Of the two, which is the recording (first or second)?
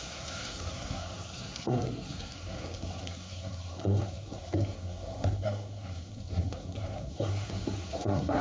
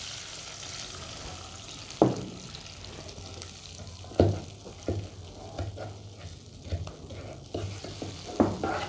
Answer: second